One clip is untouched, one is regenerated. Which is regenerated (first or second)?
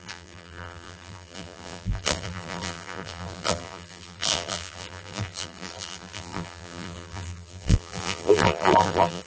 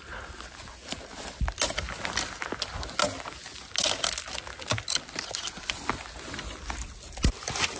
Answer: first